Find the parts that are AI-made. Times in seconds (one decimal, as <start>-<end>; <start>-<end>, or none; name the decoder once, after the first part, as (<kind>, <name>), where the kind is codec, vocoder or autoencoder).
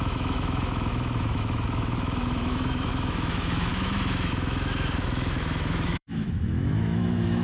0.0-7.4 (autoencoder, DAC-VAE)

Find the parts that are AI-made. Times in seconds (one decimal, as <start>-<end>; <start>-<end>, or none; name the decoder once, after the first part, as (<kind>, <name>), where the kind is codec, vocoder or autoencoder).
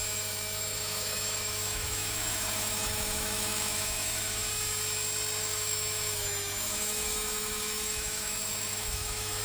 0.0-4.4 (autoencoder, DAC-VAE); 5.4-9.4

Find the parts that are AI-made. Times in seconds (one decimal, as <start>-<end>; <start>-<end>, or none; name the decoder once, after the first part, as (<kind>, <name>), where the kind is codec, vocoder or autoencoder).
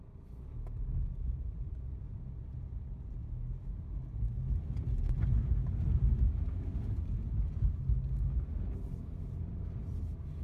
none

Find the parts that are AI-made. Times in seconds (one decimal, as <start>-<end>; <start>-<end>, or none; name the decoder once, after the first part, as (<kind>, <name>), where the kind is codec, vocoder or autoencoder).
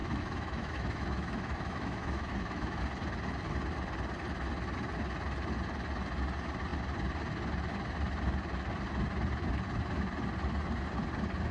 0.0-2.8 (autoencoder, DAC-VAE)